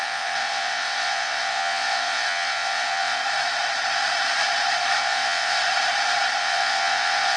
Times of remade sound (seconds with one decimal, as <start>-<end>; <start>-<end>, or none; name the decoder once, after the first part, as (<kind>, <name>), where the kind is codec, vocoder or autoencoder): 0.0-3.2 (vocoder, WaveNeXt); 5.0-5.6; 6.4-7.4